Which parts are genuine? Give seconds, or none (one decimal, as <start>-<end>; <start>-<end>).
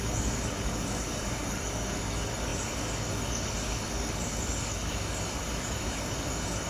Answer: none